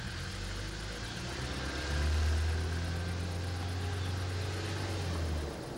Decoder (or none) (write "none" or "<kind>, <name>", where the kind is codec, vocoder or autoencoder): none